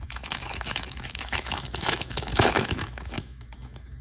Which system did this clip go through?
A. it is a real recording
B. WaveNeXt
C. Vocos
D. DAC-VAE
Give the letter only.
D